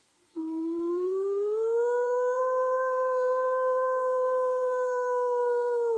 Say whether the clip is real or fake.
fake